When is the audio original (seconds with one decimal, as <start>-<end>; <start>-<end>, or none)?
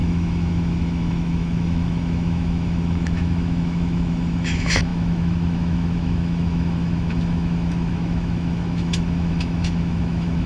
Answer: none